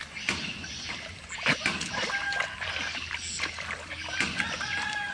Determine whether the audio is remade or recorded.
recorded